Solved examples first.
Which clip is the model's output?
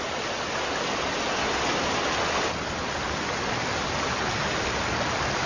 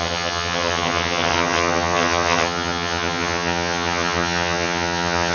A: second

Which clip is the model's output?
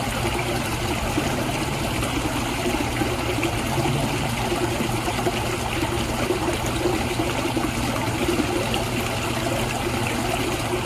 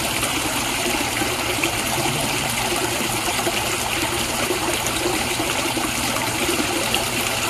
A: second